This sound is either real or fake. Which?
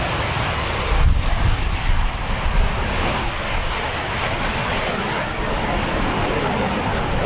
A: real